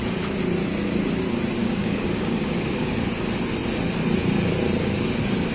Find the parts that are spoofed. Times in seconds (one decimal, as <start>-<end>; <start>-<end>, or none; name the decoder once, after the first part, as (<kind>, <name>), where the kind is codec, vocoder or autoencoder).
1.6-2.9 (codec, DAC)